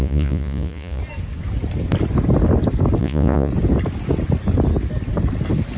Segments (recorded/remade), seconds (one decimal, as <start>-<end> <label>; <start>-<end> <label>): 0.0-1.0 remade; 1.0-3.0 recorded; 3.0-3.5 remade; 3.5-5.8 recorded